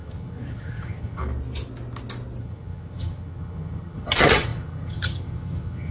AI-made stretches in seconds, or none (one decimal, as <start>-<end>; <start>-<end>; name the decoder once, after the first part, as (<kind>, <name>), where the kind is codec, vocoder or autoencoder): 0.0-1.2 (vocoder, HiFi-GAN); 2.4-5.9